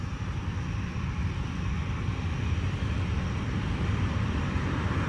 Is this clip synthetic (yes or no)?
yes